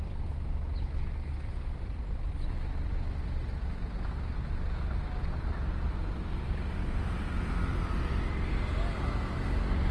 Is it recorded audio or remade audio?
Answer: recorded